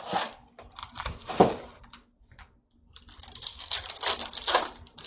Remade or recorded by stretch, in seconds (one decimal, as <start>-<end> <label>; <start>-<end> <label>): 0.0-0.8 recorded; 0.8-1.3 remade; 1.3-3.5 recorded; 3.5-4.0 remade; 4.0-5.1 recorded